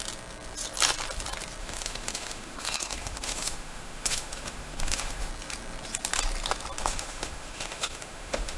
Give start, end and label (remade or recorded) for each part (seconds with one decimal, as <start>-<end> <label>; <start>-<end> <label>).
0.0-1.6 recorded; 1.6-5.3 remade; 5.3-6.8 recorded; 6.8-8.6 remade